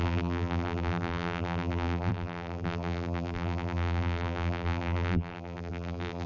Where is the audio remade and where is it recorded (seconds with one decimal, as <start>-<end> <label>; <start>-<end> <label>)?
0.0-6.3 remade